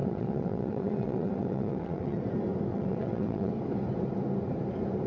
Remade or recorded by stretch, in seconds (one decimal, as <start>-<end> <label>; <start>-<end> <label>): 0.0-2.2 remade; 2.2-2.7 recorded; 2.7-3.5 remade; 3.5-5.1 recorded